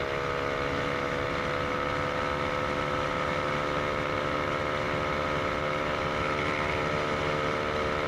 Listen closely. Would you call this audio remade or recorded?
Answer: recorded